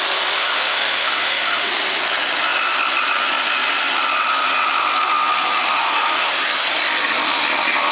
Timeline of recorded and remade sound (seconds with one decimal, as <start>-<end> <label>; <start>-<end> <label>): 0.0-0.4 recorded; 0.4-1.7 remade; 1.7-5.7 recorded; 5.7-6.3 remade; 6.3-7.9 recorded